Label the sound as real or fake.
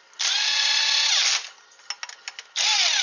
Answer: real